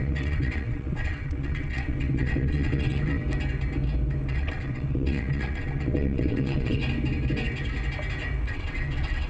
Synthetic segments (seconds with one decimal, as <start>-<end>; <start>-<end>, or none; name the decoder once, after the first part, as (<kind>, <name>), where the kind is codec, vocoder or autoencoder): 0.0-3.2 (vocoder, WaveNeXt); 4.3-6.8; 8.5-9.3